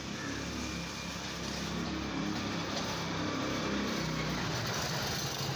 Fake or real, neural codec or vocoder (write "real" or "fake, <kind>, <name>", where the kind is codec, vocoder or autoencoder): real